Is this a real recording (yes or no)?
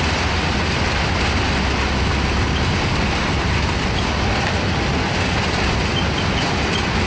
yes